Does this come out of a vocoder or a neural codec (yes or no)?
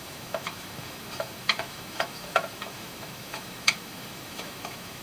yes